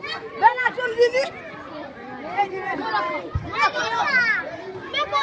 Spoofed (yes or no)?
no